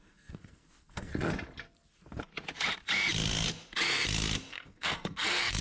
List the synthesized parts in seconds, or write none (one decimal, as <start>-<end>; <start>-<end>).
0.0-1.1; 4.5-5.6